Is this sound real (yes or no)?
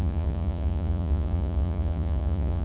no